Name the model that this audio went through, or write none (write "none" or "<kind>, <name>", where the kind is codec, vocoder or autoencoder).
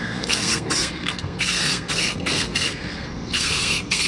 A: codec, SNAC